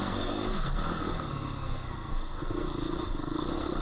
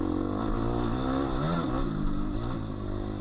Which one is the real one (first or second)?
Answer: second